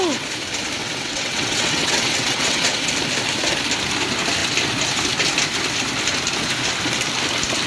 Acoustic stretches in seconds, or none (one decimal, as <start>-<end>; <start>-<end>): 0.0-0.8; 2.9-7.7